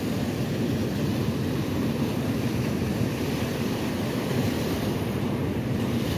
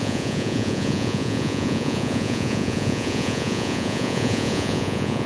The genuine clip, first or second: first